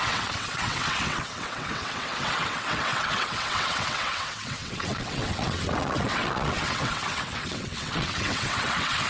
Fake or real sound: fake